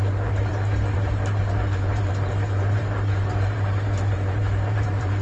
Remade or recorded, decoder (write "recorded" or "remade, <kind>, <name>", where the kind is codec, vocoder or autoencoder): remade, vocoder, BigVGAN v2